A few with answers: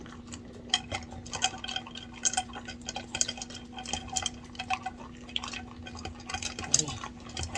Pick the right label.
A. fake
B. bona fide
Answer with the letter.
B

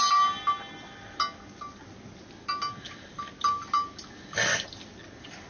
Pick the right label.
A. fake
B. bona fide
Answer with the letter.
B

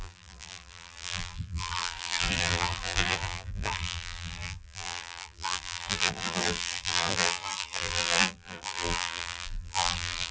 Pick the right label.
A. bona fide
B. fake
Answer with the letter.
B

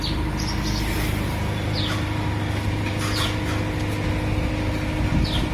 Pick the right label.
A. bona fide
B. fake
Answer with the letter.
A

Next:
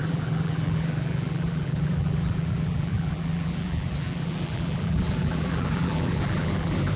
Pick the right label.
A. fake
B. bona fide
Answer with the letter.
A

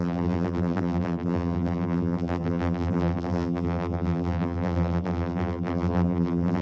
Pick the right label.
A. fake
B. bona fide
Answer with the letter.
A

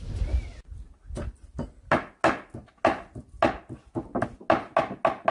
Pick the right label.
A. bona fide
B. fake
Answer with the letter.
A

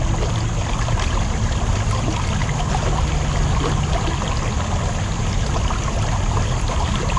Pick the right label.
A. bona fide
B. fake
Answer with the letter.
A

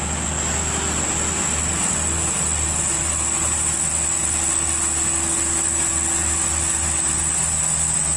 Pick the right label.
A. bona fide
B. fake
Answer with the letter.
A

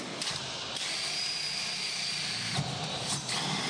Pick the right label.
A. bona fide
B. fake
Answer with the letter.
B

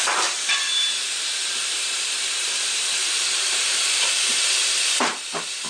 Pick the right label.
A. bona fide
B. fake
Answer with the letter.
B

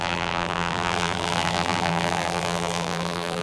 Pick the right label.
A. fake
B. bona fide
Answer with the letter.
A